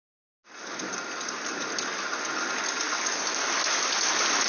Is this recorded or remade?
recorded